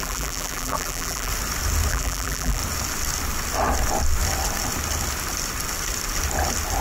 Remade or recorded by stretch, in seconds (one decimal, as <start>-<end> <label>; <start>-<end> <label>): 0.0-1.3 remade; 1.3-1.9 recorded; 1.9-2.6 remade; 2.6-6.8 recorded